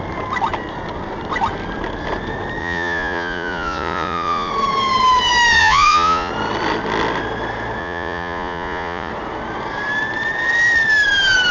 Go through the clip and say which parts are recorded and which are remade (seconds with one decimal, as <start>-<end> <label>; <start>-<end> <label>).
0.0-2.6 recorded; 2.6-4.5 remade; 4.5-5.6 recorded; 5.6-6.3 remade; 6.3-7.8 recorded; 7.8-9.1 remade; 9.1-11.5 recorded